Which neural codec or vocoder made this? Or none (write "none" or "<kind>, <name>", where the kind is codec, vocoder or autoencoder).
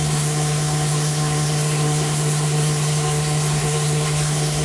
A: codec, SNAC